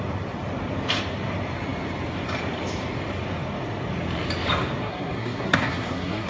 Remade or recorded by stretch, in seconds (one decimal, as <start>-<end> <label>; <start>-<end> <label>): 0.0-4.8 recorded; 4.8-6.3 remade